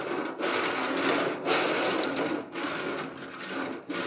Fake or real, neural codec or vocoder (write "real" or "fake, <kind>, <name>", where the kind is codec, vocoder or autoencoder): real